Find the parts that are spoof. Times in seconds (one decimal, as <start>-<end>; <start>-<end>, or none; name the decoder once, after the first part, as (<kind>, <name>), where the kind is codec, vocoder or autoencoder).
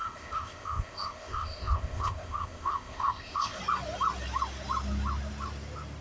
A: 0.0-3.6 (codec, ZipCodec)